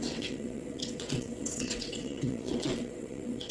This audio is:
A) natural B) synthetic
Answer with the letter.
B